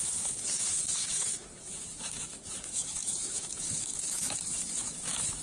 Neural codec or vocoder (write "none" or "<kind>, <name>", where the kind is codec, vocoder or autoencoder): autoencoder, DAC-VAE